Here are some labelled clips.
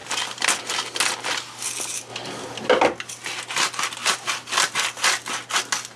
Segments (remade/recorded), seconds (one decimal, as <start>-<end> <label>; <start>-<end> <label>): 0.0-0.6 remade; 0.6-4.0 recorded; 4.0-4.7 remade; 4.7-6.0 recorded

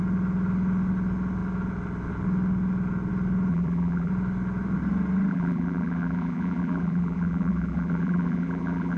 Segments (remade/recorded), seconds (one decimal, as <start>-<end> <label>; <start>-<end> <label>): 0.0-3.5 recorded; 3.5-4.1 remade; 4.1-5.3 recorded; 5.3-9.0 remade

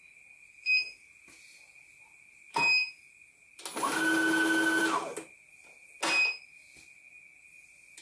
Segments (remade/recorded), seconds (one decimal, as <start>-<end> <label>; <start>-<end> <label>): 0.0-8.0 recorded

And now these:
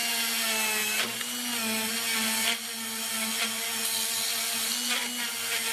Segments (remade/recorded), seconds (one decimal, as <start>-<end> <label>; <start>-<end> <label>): 0.0-5.7 recorded